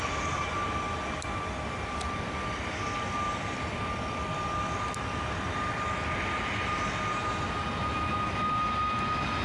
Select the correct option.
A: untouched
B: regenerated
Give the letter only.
A